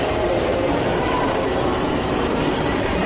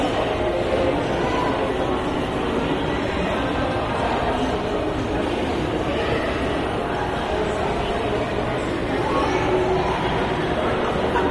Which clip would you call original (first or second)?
second